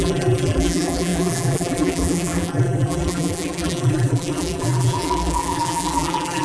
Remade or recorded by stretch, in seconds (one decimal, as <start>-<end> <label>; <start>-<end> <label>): 0.0-6.4 remade